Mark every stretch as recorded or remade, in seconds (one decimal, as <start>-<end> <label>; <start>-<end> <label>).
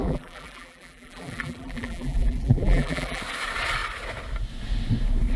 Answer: 0.0-3.2 remade; 3.2-5.4 recorded